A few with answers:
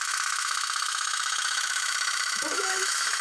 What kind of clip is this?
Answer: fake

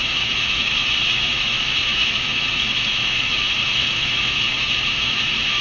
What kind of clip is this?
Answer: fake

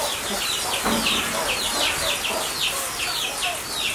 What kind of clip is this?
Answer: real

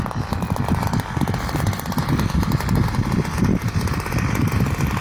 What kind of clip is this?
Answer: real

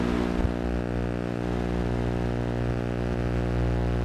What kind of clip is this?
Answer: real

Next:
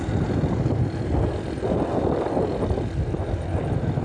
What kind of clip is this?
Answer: real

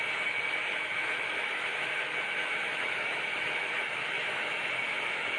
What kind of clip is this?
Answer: fake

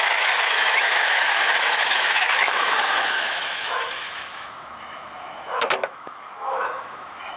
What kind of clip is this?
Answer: fake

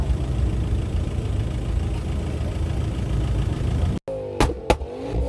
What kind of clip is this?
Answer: real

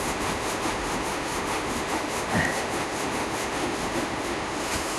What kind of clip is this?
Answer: fake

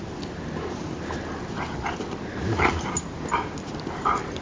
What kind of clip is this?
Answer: real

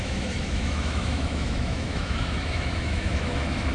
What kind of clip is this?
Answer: fake